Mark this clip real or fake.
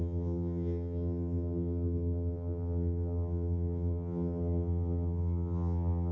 fake